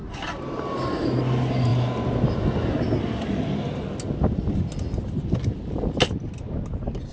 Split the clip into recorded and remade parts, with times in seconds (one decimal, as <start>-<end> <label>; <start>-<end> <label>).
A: 0.0-7.1 recorded